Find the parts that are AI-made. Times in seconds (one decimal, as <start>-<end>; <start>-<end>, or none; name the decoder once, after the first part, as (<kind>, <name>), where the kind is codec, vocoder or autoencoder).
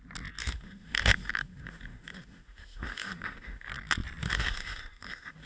0.4-3.7 (autoencoder, DAC-VAE); 4.2-5.5